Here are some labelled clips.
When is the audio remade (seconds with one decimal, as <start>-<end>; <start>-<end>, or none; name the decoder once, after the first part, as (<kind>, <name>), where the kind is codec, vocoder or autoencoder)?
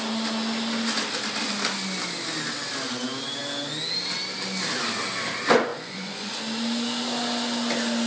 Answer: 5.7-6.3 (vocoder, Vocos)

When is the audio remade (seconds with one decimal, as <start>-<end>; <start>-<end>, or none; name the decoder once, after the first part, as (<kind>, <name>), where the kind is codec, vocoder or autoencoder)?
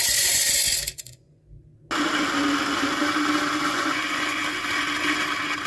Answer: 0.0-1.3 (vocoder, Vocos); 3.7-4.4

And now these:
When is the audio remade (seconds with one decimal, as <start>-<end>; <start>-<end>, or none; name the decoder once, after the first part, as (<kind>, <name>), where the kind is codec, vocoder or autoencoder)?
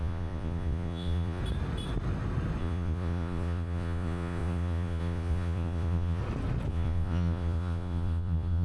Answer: 0.0-1.4 (vocoder, Vocos); 2.6-6.2; 6.7-8.6